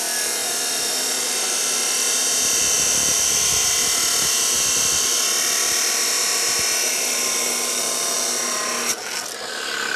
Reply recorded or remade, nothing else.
recorded